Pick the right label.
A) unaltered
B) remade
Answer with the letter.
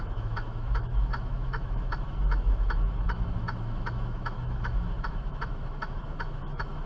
B